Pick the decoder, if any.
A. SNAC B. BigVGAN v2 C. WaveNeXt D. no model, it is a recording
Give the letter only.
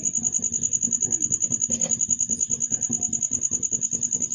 D